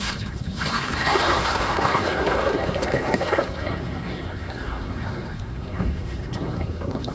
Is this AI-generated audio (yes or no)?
yes